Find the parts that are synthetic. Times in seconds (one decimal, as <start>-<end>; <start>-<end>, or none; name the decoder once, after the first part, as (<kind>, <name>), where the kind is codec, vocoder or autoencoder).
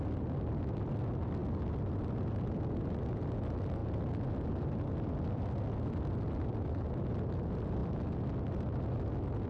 none